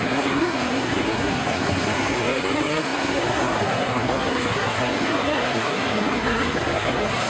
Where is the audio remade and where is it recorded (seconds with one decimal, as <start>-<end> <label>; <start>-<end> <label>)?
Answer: 0.0-7.3 remade